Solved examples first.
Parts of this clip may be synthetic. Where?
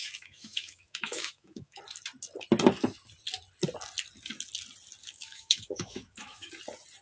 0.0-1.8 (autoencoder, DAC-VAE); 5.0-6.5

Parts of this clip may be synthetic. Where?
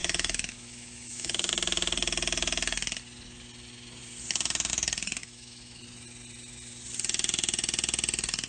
0.0-1.5 (autoencoder, DAC-VAE); 5.2-5.8